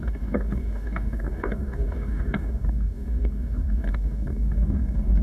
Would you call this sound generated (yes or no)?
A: yes